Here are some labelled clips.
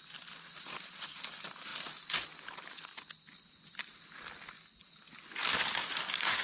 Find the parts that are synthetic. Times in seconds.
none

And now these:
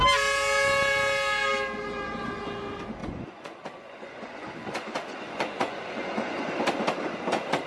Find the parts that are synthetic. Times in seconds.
3.0-6.4

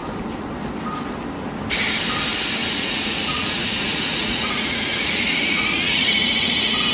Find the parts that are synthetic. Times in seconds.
2.6-6.9

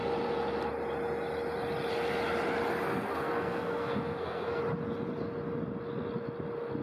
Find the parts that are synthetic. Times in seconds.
2.9-4.6

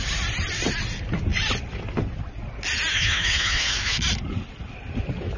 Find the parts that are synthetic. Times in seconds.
2.9-4.0

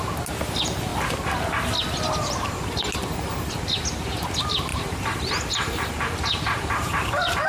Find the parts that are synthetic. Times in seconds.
4.7-7.1

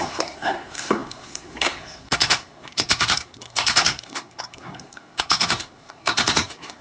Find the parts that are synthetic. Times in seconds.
0.0-6.8